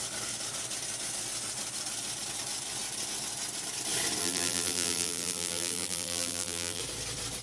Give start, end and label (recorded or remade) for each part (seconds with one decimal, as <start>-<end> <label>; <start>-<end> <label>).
0.0-4.2 recorded; 4.2-6.8 remade; 6.8-7.4 recorded